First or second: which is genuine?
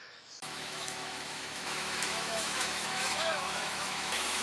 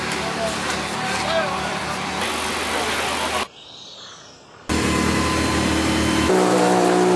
second